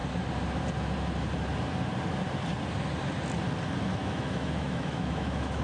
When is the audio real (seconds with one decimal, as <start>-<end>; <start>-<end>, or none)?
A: 0.0-3.9